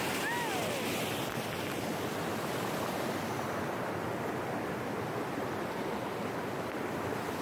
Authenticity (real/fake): real